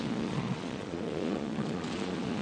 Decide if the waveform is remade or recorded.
remade